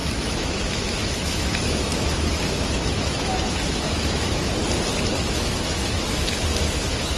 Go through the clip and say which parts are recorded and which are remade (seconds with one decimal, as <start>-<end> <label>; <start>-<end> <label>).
0.0-4.6 remade; 4.6-5.1 recorded; 5.1-7.2 remade